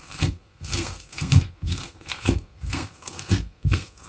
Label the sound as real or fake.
fake